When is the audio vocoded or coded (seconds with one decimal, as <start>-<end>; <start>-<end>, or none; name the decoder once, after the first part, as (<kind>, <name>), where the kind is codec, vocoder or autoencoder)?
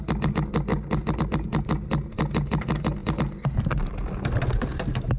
none